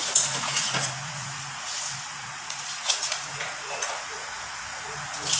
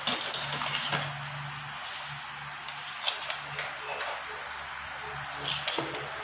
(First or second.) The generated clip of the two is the first